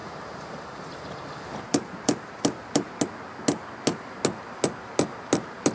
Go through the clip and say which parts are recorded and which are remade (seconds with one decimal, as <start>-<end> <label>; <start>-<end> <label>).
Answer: 0.0-3.0 remade; 3.0-5.7 recorded